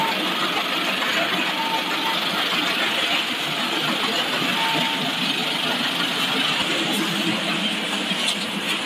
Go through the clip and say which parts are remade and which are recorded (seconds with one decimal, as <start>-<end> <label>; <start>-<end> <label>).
0.0-8.9 recorded